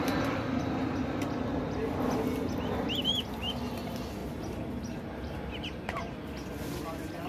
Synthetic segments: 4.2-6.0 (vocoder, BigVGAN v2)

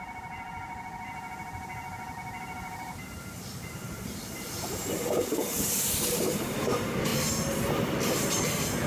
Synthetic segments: 0.0-7.1 (vocoder, BigVGAN v2); 8.0-8.9

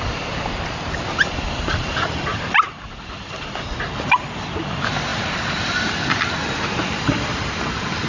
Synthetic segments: 2.3-4.6 (vocoder, BigVGAN v2); 5.1-5.8

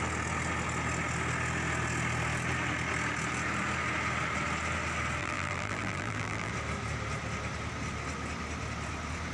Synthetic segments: 5.2-6.5 (vocoder, BigVGAN v2)

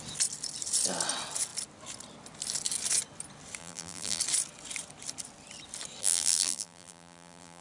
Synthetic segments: 3.6-4.2 (vocoder, BigVGAN v2); 6.0-7.6

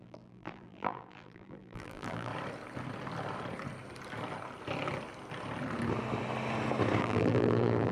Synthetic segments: 0.0-2.3 (vocoder, BigVGAN v2); 7.0-7.9

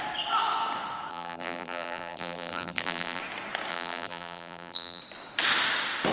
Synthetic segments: 1.1-3.2 (vocoder, BigVGAN v2); 3.7-5.0

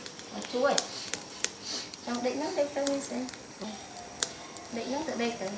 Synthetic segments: 0.0-3.4 (vocoder, BigVGAN v2)